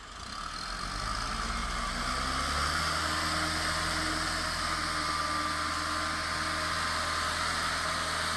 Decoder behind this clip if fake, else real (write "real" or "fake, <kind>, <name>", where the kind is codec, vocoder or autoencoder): real